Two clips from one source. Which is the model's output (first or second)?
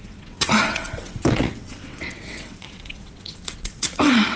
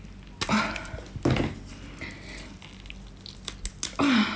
first